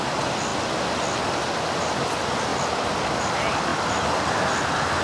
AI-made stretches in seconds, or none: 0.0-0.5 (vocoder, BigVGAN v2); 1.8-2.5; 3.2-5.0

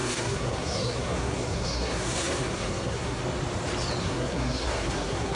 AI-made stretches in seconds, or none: 0.0-3.2 (codec, SNAC); 4.0-5.4

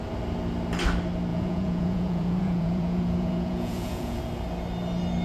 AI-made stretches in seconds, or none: 1.3-4.2 (vocoder, Vocos)

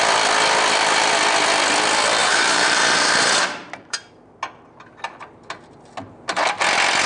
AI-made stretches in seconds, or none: 2.2-4.2 (vocoder, BigVGAN v2)

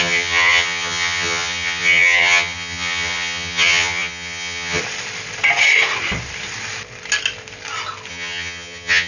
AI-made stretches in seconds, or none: 0.0-4.8 (vocoder, HiFi-GAN); 8.1-9.1

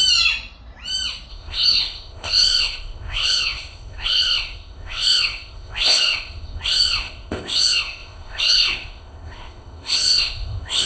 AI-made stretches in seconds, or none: 1.3-10.8 (codec, ZipCodec)